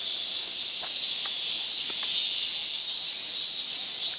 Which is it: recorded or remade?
recorded